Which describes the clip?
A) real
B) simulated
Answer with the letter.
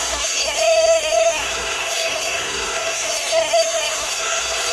B